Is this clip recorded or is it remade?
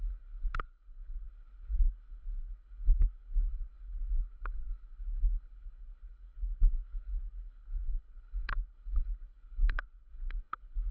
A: remade